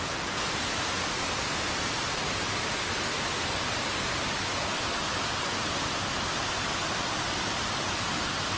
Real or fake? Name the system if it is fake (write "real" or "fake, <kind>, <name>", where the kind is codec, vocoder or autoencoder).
real